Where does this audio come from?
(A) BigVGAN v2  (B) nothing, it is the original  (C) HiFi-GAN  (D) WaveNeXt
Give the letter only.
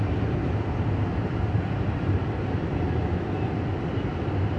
B